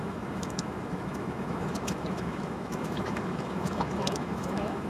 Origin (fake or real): fake